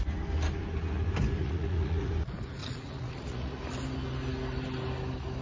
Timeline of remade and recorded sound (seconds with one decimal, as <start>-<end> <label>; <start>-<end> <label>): 0.0-1.4 recorded; 1.4-2.1 remade; 2.1-2.6 recorded; 2.6-3.6 remade; 3.6-5.4 recorded